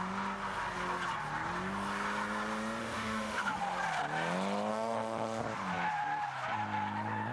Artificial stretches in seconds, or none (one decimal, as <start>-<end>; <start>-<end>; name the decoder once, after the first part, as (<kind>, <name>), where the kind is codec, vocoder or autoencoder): 2.8-3.6 (autoencoder, DAC-VAE); 4.7-5.4